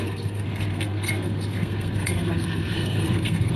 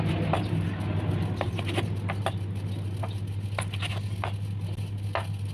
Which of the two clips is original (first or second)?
second